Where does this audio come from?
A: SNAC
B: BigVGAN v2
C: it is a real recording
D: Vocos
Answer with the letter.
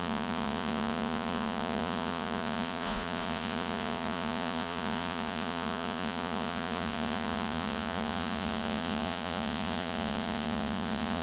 D